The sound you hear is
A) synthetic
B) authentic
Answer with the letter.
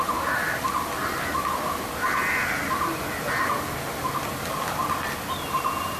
B